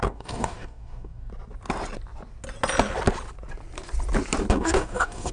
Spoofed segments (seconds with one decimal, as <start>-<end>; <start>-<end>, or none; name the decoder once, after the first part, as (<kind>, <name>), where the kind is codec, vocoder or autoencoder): 0.0-1.3 (codec, DAC); 4.5-5.3